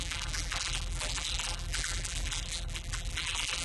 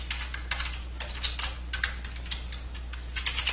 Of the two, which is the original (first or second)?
second